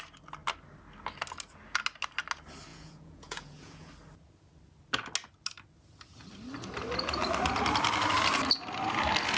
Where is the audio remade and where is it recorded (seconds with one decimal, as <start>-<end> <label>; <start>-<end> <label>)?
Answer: 0.0-2.7 recorded; 2.7-3.9 remade; 3.9-9.4 recorded